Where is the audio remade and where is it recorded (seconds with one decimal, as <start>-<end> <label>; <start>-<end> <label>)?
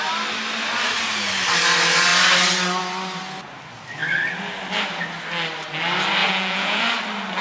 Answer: 0.0-6.2 recorded; 6.2-6.8 remade; 6.8-7.4 recorded